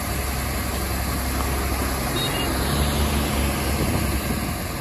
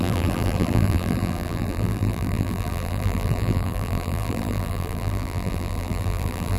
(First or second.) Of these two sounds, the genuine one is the first